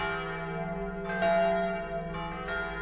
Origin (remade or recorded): recorded